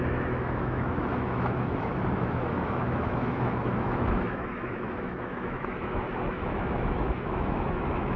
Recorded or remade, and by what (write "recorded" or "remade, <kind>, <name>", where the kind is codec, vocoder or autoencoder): remade, autoencoder, DAC-VAE